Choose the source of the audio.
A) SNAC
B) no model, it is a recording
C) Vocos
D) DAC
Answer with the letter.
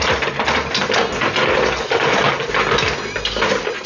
B